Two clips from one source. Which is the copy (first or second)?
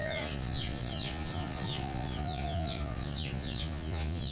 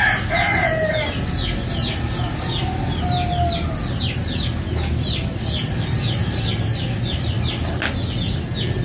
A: first